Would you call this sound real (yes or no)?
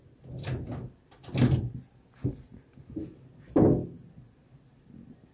yes